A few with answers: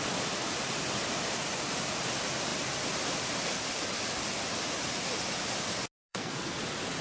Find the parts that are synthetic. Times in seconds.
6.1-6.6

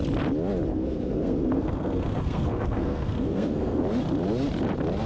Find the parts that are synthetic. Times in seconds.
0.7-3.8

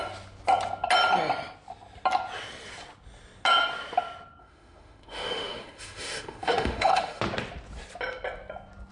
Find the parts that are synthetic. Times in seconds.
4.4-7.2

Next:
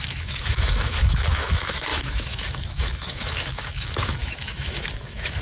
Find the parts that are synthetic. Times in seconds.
0.0-5.4

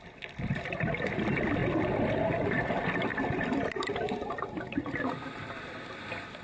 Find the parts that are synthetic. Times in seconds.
3.1-5.7

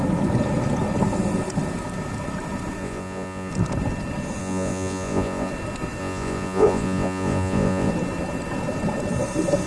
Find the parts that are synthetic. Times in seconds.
2.8-3.5; 4.4-5.5; 6.0-7.9